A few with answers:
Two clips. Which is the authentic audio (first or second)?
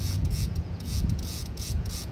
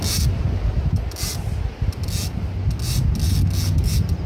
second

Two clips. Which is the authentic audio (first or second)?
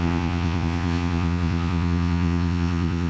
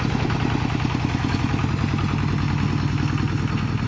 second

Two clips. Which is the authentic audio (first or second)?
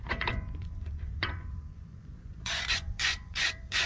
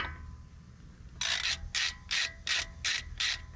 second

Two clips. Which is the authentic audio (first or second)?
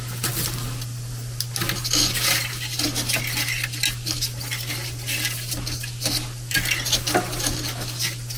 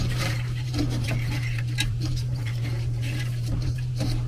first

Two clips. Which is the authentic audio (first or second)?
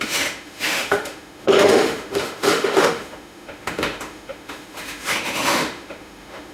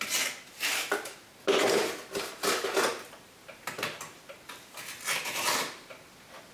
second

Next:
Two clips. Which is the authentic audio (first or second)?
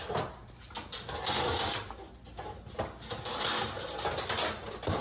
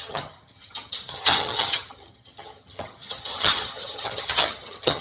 first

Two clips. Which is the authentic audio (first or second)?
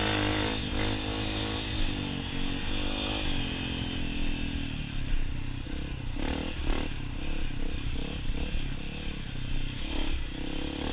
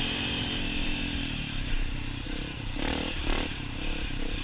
first